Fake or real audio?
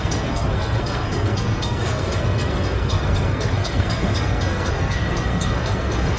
fake